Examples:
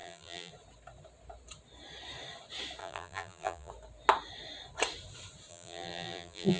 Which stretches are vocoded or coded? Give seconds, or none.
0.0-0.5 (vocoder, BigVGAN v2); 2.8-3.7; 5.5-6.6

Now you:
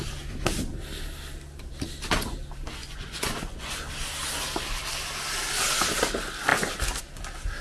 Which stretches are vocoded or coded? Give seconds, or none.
2.8-3.7 (vocoder, Vocos)

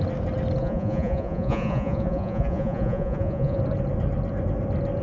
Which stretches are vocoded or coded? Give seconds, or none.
0.6-3.6 (vocoder, Vocos)

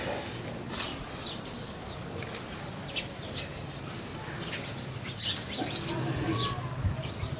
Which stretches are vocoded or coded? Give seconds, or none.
0.9-5.3 (vocoder, BigVGAN v2)

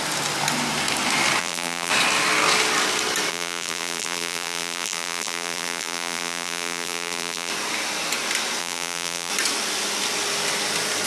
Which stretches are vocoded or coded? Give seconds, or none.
1.4-1.9 (vocoder, BigVGAN v2); 3.3-7.5; 8.6-9.3

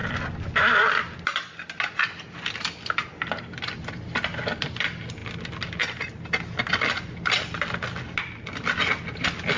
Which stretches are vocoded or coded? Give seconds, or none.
none